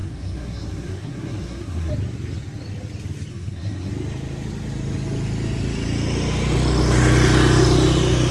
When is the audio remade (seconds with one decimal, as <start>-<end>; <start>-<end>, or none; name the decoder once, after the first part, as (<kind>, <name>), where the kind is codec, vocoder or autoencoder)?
0.0-1.9 (codec, SNAC); 3.3-3.9